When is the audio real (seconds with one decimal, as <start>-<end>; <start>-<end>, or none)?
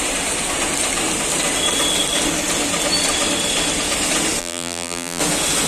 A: 0.0-4.4; 5.2-5.7